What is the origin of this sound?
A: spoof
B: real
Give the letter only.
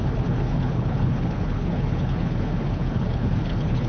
A